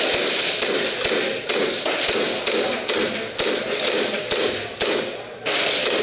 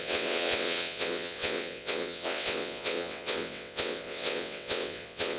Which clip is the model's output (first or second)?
second